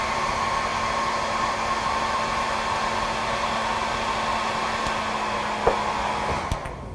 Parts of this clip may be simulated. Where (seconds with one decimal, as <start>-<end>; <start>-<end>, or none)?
none